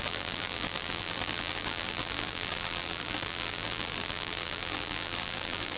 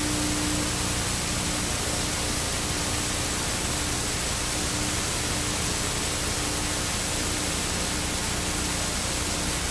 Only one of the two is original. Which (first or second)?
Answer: second